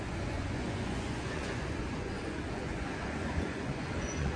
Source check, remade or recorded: remade